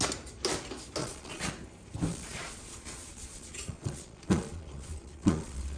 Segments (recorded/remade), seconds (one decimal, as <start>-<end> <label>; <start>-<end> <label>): 0.0-1.0 recorded; 1.0-1.5 remade; 1.5-2.1 recorded; 2.1-5.8 remade